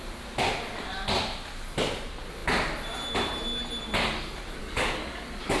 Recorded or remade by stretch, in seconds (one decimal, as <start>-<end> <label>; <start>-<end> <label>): 0.0-4.6 recorded; 4.6-5.6 remade